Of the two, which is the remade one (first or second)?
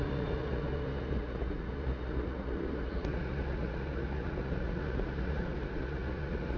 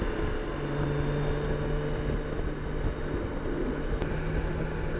first